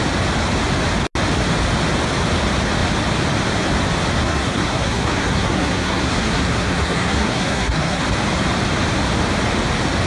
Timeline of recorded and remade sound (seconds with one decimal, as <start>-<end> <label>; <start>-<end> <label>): 0.0-4.2 recorded; 4.2-8.0 remade; 8.0-10.1 recorded